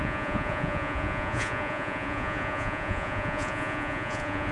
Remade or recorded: remade